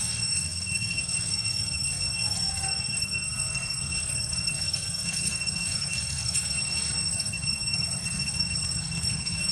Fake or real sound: fake